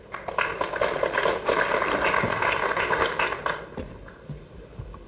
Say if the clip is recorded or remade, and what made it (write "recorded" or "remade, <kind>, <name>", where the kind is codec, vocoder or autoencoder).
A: recorded